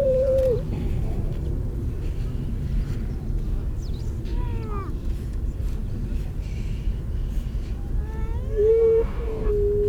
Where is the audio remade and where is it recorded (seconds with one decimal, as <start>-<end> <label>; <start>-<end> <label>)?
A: 0.0-8.7 recorded; 8.7-9.5 remade; 9.5-9.9 recorded